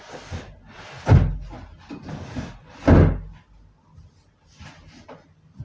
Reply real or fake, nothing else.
real